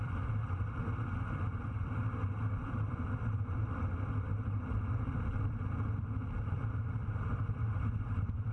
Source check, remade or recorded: remade